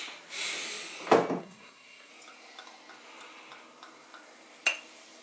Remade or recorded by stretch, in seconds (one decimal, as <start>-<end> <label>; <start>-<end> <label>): 0.0-1.4 recorded; 1.4-2.1 remade; 2.1-5.2 recorded